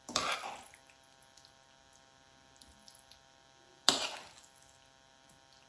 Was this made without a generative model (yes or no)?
yes